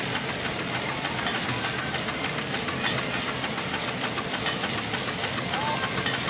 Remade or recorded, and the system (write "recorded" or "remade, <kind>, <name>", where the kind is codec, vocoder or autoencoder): recorded